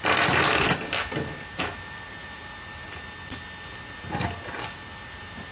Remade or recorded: recorded